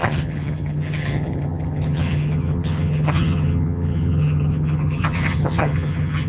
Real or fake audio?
fake